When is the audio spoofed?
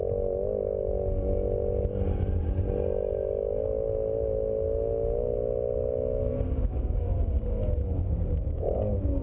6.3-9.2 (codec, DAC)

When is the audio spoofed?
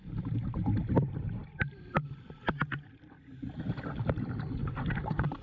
none